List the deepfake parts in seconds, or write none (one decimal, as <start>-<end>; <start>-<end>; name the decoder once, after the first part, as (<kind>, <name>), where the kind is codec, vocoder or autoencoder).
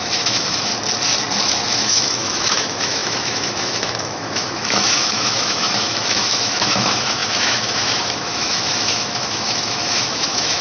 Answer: 0.0-0.7 (autoencoder, DAC-VAE); 1.4-10.6